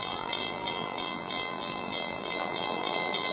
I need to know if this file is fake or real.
fake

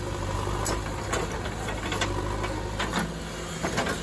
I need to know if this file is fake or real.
real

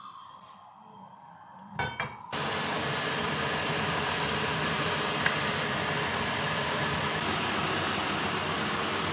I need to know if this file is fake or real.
real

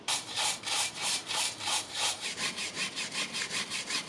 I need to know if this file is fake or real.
fake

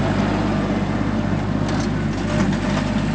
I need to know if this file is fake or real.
real